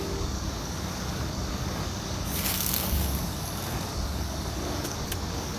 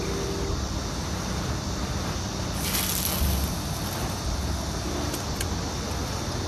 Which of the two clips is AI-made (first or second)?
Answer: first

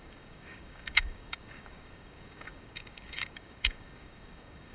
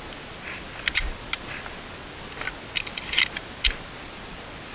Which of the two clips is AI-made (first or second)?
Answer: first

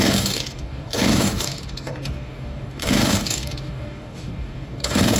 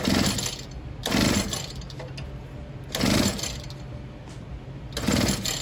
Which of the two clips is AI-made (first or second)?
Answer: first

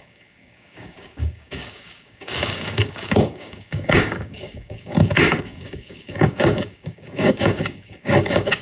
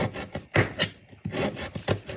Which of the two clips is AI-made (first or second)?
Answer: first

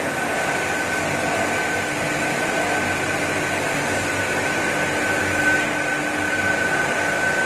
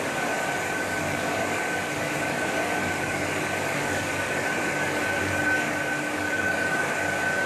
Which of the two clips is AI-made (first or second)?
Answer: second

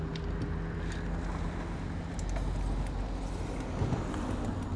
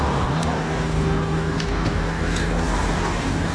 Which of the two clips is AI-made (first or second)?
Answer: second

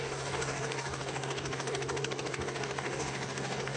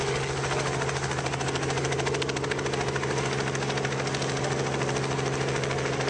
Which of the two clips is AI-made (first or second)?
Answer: first